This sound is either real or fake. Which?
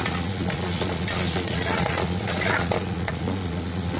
fake